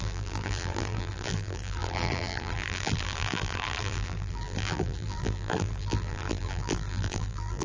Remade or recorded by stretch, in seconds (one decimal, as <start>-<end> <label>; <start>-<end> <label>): 0.0-7.6 remade